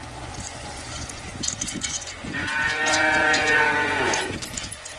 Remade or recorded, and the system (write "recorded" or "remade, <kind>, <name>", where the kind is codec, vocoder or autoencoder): remade, vocoder, Vocos